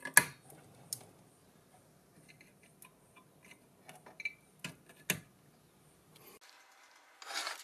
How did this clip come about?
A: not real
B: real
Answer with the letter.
B